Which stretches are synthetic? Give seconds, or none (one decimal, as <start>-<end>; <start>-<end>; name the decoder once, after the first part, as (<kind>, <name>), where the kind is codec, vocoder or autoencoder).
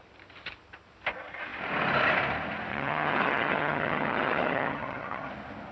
2.7-5.3 (vocoder, HiFi-GAN)